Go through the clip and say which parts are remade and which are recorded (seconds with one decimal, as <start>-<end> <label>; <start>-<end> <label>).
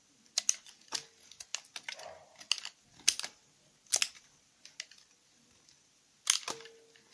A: 0.0-7.1 recorded